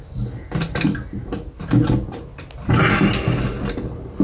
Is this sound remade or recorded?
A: recorded